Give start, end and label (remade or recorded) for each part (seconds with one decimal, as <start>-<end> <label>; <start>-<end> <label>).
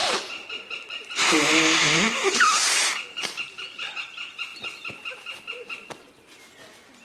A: 0.0-3.9 remade; 3.9-7.0 recorded